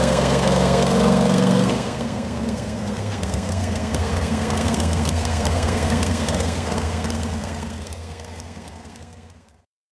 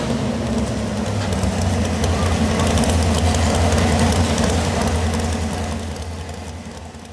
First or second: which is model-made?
first